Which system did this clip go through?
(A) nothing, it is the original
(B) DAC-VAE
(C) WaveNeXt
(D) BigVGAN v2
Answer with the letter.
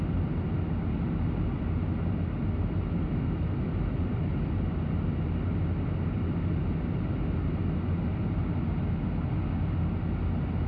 A